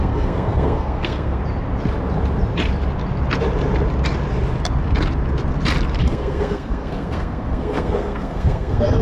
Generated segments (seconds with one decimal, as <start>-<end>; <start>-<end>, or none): 0.0-1.4; 6.0-9.0